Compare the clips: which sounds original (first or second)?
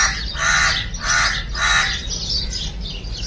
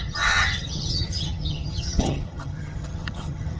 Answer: first